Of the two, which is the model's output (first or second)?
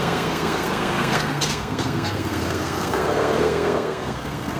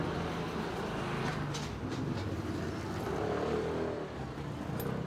first